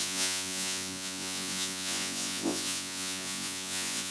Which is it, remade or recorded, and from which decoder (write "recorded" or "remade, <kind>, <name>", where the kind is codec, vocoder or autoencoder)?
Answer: remade, vocoder, Vocos